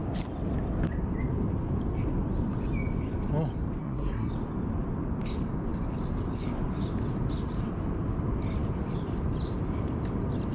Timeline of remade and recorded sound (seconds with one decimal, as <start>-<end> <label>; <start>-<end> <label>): 0.0-3.8 recorded; 3.8-4.3 remade; 4.3-10.5 recorded